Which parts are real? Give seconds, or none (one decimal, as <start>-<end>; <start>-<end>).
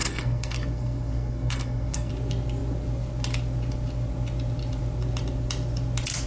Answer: 2.1-6.3